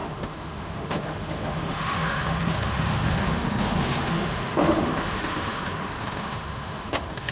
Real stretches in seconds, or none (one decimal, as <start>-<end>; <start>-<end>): none